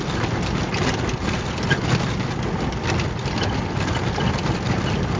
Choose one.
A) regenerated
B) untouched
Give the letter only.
B